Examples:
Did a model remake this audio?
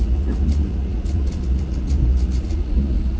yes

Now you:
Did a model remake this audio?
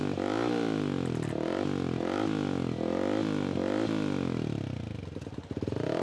no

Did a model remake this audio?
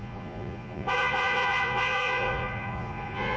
yes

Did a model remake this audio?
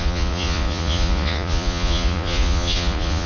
yes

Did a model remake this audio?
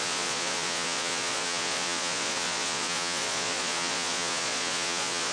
yes